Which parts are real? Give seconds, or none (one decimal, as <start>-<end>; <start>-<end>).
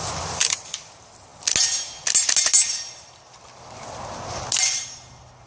1.3-4.6